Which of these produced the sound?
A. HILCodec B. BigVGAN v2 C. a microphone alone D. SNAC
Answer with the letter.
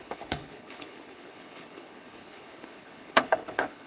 A